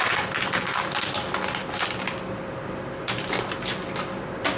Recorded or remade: recorded